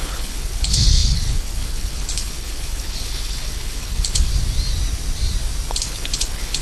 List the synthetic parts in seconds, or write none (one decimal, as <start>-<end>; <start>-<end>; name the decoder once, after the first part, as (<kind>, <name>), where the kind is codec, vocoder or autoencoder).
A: 0.0-4.3 (codec, HILCodec); 5.7-6.6